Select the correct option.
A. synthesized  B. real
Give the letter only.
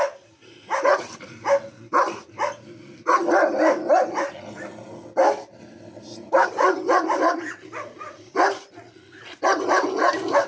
B